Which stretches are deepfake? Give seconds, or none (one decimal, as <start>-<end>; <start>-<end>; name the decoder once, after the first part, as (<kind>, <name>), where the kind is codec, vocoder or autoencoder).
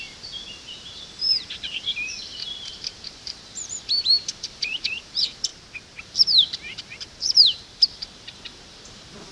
0.0-5.5 (vocoder, BigVGAN v2); 6.0-9.3